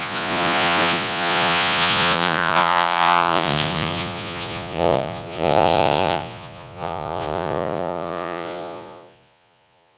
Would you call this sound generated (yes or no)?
yes